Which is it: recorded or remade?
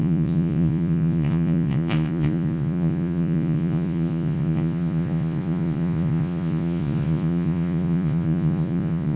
remade